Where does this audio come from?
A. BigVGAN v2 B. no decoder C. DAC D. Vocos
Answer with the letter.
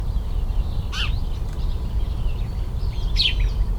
A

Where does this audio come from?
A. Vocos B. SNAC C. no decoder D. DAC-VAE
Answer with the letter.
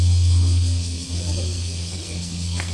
B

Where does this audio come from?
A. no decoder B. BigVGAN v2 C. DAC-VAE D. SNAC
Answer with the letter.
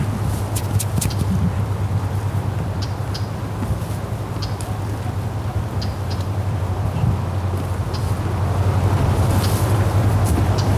A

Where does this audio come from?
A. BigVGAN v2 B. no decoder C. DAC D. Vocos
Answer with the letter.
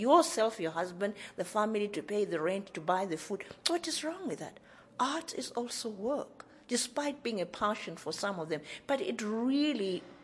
B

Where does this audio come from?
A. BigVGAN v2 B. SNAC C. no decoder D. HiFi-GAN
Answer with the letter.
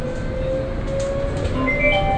C